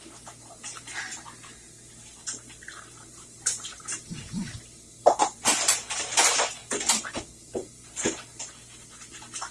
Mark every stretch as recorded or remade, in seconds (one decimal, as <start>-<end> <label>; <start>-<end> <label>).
0.0-1.1 recorded; 1.1-2.7 remade; 2.7-3.1 recorded; 3.1-6.0 remade; 6.0-6.6 recorded; 6.6-8.4 remade; 8.4-9.5 recorded

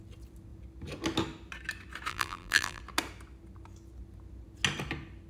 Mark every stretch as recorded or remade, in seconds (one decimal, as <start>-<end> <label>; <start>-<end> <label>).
0.0-2.1 recorded; 2.1-2.8 remade; 2.8-5.3 recorded

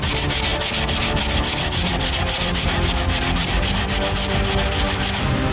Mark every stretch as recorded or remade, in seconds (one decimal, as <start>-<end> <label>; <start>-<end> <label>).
0.0-0.5 recorded; 0.5-3.8 remade; 3.8-5.5 recorded

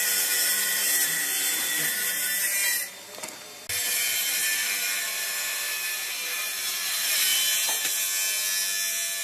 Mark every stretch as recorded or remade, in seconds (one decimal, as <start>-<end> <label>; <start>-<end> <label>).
0.0-2.6 remade; 2.6-3.8 recorded; 3.8-7.3 remade; 7.3-9.2 recorded

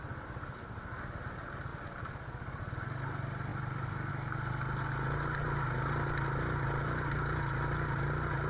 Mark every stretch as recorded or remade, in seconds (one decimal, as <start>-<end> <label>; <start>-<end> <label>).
0.0-3.5 recorded; 3.5-4.1 remade; 4.1-8.5 recorded

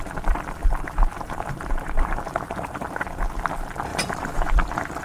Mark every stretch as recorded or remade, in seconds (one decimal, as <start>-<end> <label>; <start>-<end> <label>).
0.0-0.6 recorded; 0.6-2.9 remade; 2.9-3.9 recorded; 3.9-4.6 remade; 4.6-5.0 recorded

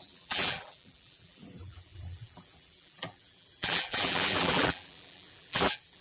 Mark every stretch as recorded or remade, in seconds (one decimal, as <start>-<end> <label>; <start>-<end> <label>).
0.0-6.0 remade